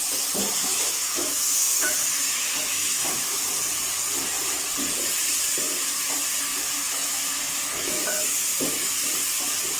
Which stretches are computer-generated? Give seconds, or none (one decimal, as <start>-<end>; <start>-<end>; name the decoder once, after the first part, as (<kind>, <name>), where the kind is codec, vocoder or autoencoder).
0.6-3.5 (autoencoder, DAC-VAE); 6.5-9.0